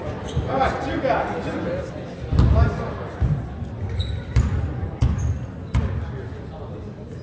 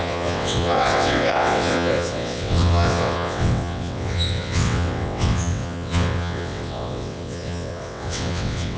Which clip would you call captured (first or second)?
first